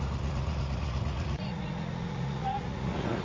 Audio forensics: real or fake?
fake